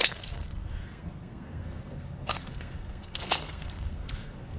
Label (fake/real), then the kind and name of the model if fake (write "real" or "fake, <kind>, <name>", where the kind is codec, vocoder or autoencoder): fake, codec, SNAC